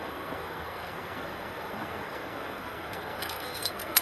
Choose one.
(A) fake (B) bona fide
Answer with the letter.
A